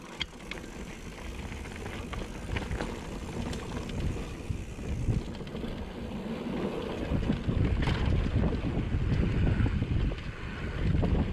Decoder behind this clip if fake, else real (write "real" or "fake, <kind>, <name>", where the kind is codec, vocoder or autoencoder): real